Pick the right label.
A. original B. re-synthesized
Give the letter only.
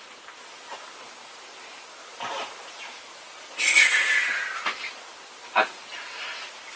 A